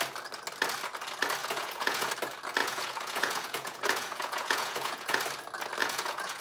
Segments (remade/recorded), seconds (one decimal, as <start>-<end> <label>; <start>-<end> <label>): 0.0-1.4 recorded; 1.4-2.1 remade; 2.1-2.6 recorded; 2.6-5.2 remade; 5.2-5.8 recorded; 5.8-6.4 remade